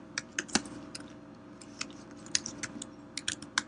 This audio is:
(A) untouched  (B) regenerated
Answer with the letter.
A